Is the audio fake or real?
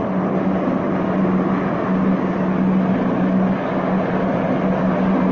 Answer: real